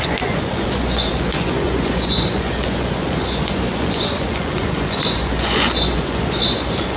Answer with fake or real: fake